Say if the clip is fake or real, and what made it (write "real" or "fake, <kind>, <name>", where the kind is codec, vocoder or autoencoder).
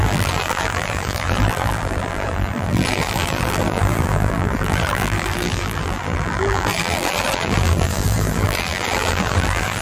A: fake, vocoder, BigVGAN v2